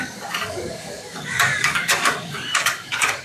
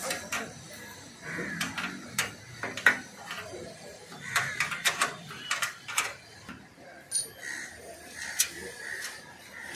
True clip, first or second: second